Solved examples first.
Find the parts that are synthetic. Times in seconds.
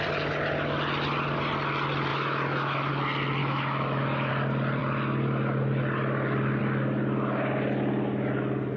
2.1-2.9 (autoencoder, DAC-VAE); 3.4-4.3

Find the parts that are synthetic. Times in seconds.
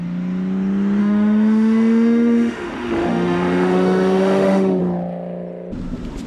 1.0-4.8 (autoencoder, DAC-VAE)